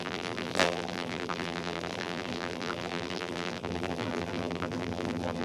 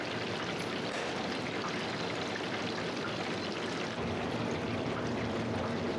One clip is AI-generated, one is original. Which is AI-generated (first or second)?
first